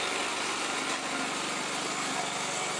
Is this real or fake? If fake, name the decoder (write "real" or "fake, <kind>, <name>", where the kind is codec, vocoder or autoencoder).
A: real